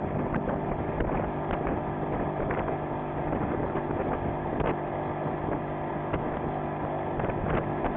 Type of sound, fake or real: real